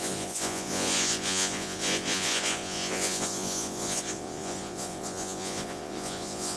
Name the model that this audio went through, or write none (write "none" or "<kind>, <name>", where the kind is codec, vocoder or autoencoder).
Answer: vocoder, Vocos